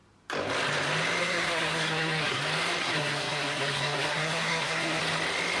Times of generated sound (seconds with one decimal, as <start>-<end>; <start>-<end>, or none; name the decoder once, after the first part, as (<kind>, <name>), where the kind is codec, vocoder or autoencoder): 1.2-2.4 (codec, SNAC); 2.8-5.0